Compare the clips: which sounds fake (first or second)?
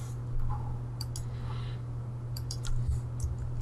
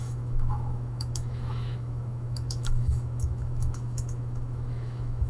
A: second